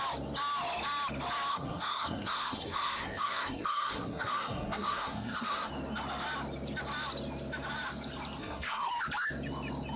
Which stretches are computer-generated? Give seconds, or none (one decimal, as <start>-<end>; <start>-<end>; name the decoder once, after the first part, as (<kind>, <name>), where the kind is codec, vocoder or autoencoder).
1.5-5.7 (codec, SNAC); 8.4-8.9

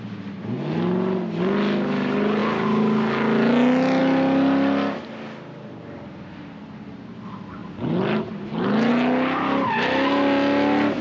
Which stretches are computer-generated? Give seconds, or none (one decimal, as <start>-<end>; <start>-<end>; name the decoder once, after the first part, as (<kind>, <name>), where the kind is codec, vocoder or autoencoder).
none

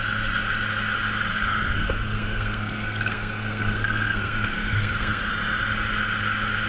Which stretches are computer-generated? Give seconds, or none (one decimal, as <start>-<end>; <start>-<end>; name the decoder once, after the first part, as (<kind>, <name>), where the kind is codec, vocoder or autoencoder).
1.3-5.3 (codec, SNAC)

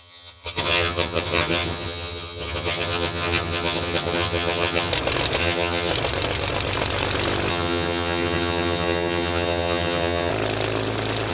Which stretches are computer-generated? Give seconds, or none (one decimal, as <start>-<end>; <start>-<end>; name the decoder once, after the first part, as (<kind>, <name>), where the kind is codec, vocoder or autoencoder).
0.0-4.9 (vocoder, HiFi-GAN); 5.4-5.9; 7.5-10.3